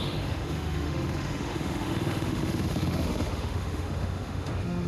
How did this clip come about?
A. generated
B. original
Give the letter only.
A